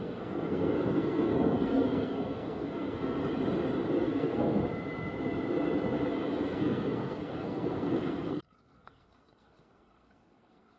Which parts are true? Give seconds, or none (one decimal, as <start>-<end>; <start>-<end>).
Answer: 3.2-4.0; 4.6-6.4